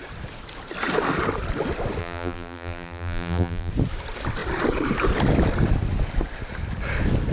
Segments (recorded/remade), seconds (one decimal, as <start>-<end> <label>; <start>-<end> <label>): 0.0-2.0 recorded; 2.0-3.7 remade; 3.7-7.3 recorded